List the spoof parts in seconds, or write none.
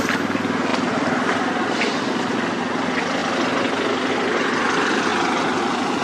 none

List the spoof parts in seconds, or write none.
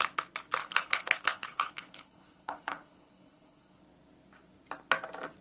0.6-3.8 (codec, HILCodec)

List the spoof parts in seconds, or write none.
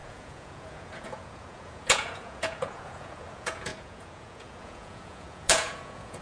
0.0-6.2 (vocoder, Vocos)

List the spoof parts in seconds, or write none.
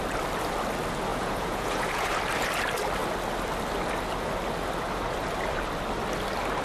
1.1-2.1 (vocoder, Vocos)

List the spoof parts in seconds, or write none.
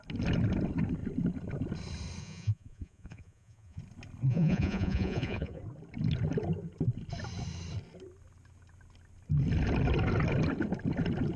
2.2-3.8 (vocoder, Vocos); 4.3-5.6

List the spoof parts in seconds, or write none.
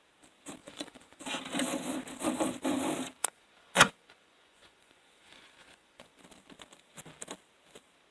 0.6-1.2 (vocoder, Vocos); 3.2-6.1